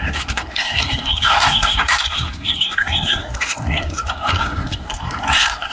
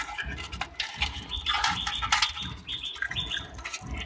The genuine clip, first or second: second